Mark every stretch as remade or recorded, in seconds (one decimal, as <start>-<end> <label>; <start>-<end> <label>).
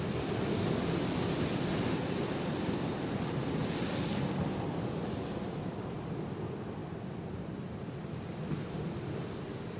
0.0-9.8 recorded